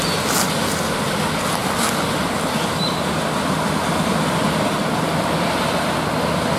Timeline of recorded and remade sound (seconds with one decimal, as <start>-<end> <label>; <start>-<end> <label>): 0.0-6.6 recorded

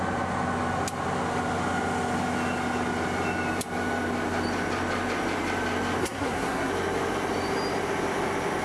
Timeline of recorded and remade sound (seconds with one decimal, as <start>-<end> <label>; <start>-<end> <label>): 0.0-6.0 recorded; 6.0-6.7 remade; 6.7-8.6 recorded

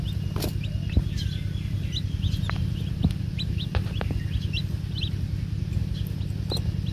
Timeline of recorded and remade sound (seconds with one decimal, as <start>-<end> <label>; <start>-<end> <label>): 0.0-6.9 recorded

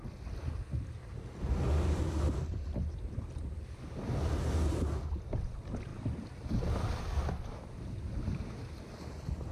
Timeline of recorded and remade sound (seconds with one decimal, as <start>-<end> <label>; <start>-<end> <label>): 0.0-9.5 recorded

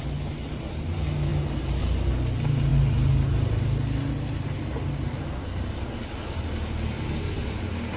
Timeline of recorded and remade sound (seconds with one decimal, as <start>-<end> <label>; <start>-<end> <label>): 0.0-8.0 recorded

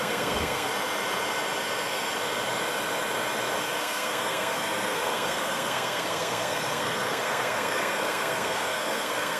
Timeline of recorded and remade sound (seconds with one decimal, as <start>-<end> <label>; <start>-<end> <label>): 0.0-0.7 remade; 0.7-3.8 recorded; 3.8-9.4 remade